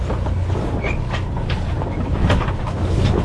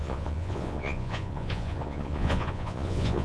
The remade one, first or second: second